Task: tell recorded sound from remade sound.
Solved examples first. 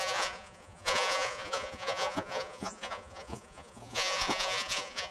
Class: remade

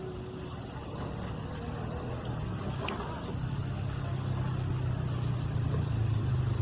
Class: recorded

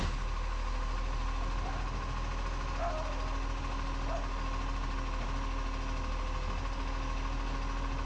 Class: recorded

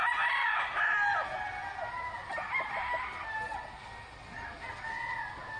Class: recorded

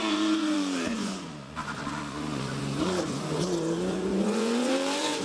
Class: remade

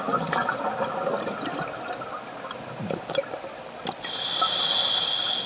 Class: recorded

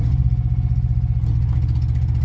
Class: recorded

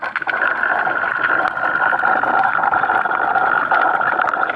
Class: recorded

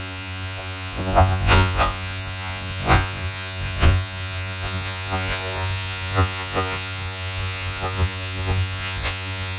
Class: remade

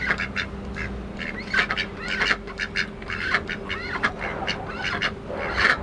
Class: recorded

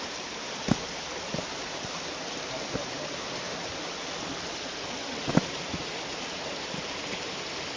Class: recorded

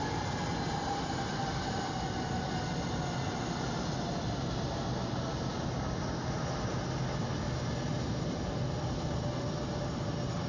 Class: recorded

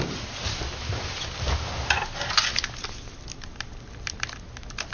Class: recorded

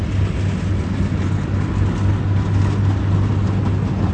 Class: recorded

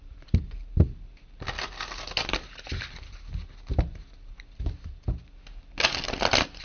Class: recorded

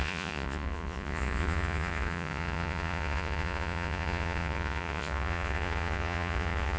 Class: remade